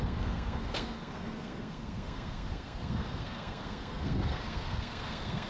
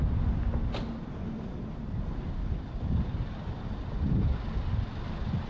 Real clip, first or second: second